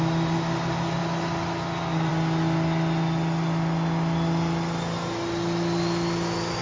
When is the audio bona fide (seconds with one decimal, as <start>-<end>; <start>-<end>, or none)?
0.0-6.6